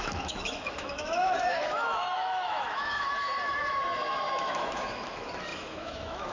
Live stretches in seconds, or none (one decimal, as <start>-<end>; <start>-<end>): none